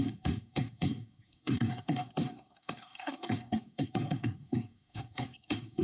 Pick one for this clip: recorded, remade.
remade